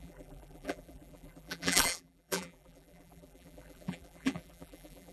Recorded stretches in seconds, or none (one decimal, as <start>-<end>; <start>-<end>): none